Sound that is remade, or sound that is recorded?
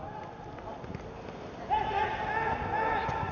recorded